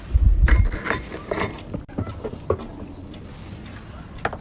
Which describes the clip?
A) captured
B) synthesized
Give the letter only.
A